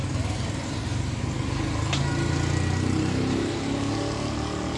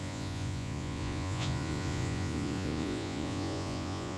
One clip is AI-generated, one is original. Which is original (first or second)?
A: first